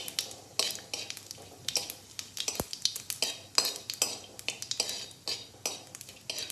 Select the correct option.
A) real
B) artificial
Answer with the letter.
A